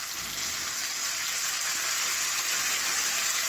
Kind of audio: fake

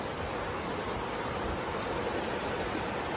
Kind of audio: real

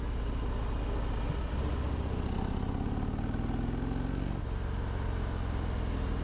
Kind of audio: real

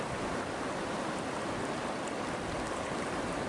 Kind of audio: real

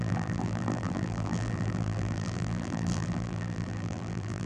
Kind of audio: fake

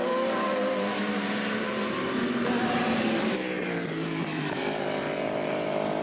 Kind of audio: fake